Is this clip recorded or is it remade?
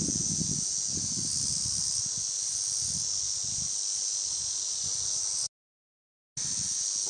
recorded